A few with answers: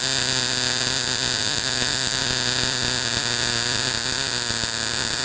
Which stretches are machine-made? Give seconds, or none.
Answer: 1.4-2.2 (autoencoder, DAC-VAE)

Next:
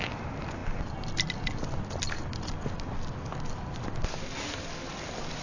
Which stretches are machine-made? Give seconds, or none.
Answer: none

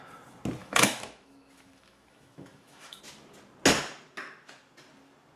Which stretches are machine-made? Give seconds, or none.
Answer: 0.6-3.0 (autoencoder, DAC-VAE)

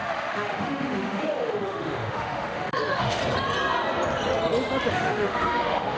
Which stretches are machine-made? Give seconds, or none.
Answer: 0.0-3.2 (autoencoder, DAC-VAE); 4.9-6.0